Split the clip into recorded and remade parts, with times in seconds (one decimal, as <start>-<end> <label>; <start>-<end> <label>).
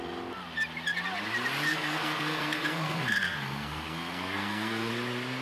0.0-1.7 recorded; 1.7-4.9 remade; 4.9-5.4 recorded